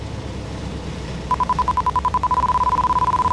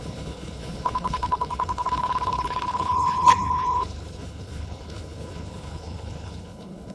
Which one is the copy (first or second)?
second